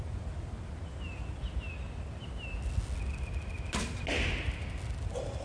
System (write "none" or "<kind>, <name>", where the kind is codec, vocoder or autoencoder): none